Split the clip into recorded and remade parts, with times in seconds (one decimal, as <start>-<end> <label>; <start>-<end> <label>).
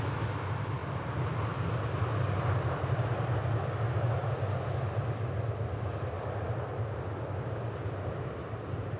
0.0-0.8 recorded; 0.8-1.4 remade; 1.4-9.0 recorded